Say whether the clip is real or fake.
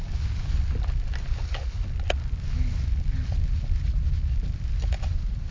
fake